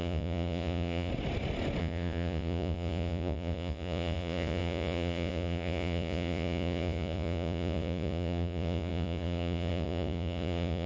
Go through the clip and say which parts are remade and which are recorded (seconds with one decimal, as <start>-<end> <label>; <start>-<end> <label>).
0.0-1.1 remade; 1.1-1.8 recorded; 1.8-10.9 remade